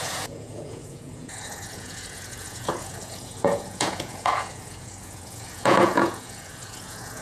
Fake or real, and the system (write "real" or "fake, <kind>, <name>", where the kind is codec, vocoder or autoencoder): fake, vocoder, Vocos